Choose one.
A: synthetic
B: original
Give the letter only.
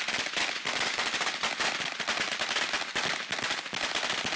B